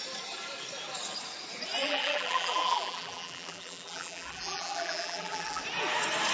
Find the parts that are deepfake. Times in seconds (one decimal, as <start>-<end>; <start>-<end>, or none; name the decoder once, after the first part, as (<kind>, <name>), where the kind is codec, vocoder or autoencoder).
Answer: 1.8-5.6 (vocoder, BigVGAN v2)